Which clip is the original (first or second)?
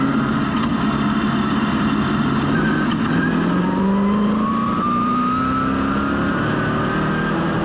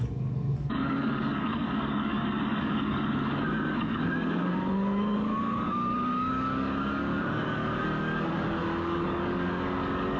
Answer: first